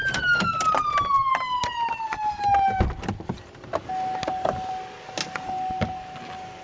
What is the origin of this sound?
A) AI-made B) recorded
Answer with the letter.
B